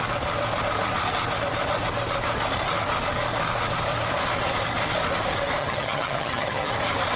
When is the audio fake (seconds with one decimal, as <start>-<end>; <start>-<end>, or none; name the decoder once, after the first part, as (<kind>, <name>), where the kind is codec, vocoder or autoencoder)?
5.6-6.7 (vocoder, HiFi-GAN)